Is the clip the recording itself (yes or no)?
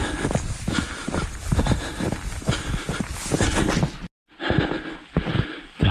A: yes